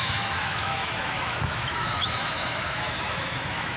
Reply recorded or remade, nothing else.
remade